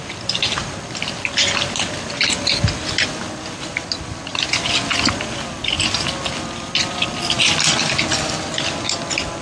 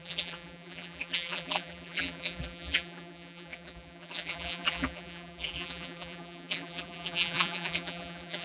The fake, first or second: second